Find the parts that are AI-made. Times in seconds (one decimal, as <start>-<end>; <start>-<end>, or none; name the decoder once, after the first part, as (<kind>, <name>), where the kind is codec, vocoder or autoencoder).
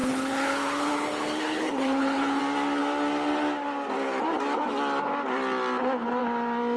0.0-2.4 (codec, HILCodec)